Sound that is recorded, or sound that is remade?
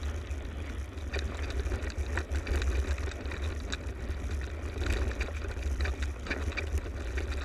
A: recorded